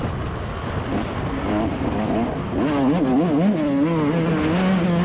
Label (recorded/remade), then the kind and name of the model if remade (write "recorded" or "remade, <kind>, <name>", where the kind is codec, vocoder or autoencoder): recorded